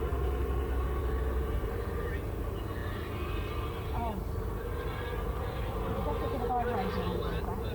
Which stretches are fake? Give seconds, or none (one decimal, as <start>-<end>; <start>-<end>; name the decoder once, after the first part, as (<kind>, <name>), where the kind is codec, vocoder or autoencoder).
7.1-7.7 (vocoder, Vocos)